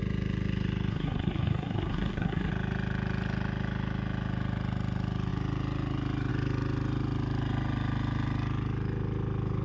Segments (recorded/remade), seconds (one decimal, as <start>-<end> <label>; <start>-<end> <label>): 0.0-0.9 recorded; 0.9-2.5 remade; 2.5-9.6 recorded